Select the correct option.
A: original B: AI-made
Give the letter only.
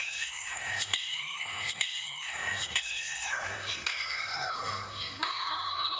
B